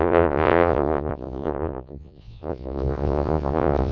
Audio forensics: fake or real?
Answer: fake